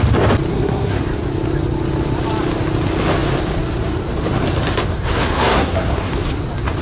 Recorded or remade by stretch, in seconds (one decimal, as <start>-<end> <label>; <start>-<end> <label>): 0.0-0.5 recorded; 0.5-1.0 remade; 1.0-4.9 recorded; 4.9-6.1 remade; 6.1-6.8 recorded